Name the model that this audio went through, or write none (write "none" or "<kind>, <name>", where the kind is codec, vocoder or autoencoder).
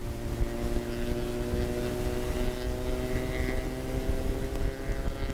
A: none